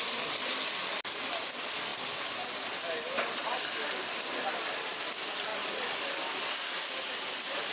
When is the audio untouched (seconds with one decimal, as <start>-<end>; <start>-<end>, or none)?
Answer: 0.0-7.7